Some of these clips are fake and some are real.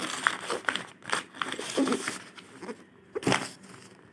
real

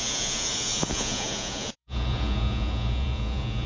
fake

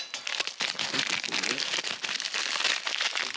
real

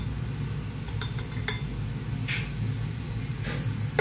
real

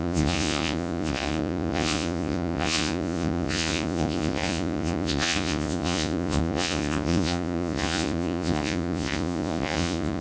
fake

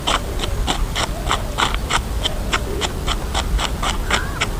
real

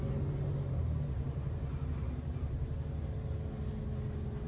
real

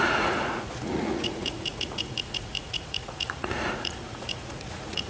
fake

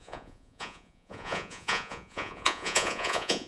fake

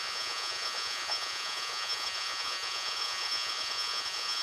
fake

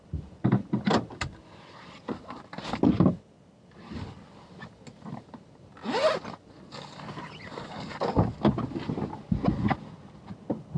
real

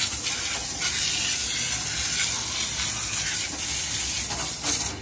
real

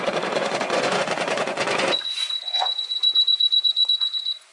fake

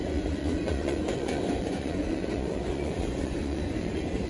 fake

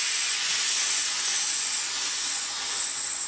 fake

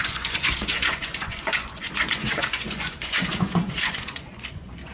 fake